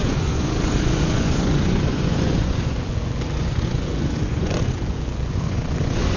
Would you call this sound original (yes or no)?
no